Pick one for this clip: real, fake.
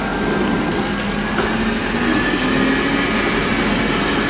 real